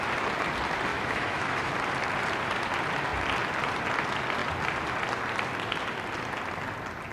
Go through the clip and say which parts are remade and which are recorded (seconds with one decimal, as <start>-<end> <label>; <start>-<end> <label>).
0.0-0.9 recorded; 0.9-1.7 remade; 1.7-7.1 recorded